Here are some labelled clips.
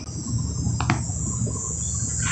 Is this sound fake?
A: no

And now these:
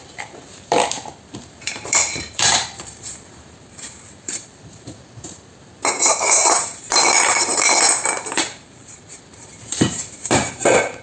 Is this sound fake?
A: yes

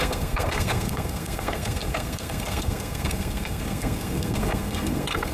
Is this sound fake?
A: yes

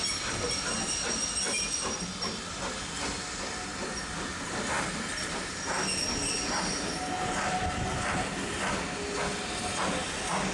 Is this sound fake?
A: no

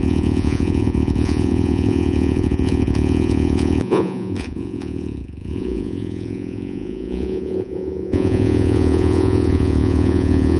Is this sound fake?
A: yes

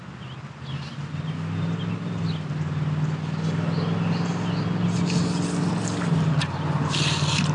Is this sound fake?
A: no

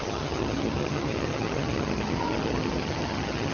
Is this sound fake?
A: yes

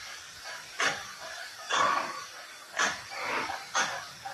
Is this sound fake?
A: yes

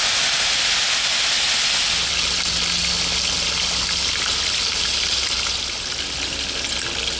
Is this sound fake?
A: no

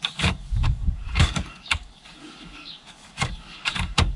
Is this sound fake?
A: yes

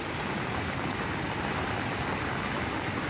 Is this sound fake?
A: no